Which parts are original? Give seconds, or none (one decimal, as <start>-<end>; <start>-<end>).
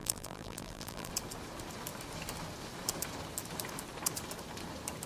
1.1-5.1